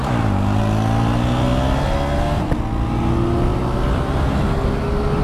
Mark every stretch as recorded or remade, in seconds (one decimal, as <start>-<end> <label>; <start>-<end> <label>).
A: 0.0-0.6 remade; 0.6-3.5 recorded; 3.5-4.1 remade; 4.1-5.2 recorded